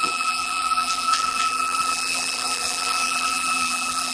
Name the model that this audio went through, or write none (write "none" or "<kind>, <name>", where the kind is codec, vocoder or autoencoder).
vocoder, BigVGAN v2